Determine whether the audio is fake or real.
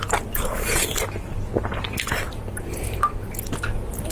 real